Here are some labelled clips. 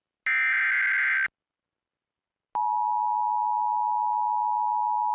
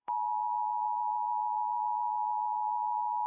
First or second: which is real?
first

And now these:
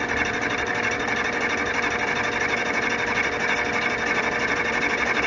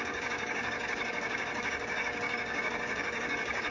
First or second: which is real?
first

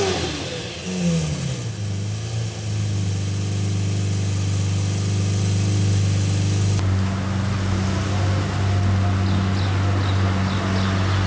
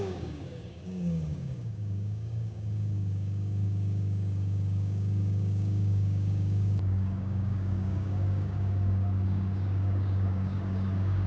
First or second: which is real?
first